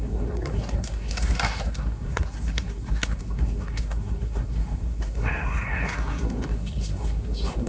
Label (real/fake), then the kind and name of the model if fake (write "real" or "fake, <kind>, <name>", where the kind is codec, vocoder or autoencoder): fake, codec, SNAC